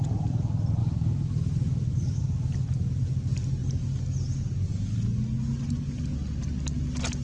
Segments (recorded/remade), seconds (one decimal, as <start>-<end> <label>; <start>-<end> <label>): 0.0-0.8 recorded; 0.8-2.2 remade; 2.2-7.2 recorded